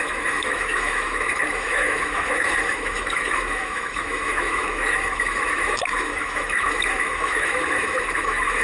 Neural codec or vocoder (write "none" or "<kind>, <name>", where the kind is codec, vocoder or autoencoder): autoencoder, DAC-VAE